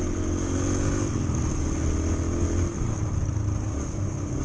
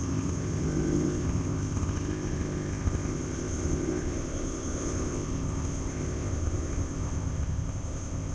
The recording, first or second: first